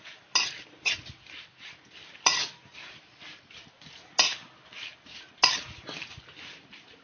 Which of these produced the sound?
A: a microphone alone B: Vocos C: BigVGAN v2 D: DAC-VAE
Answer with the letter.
A